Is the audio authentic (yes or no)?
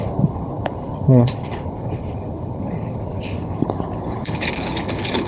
no